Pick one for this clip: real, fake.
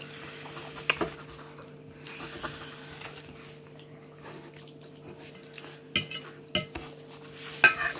real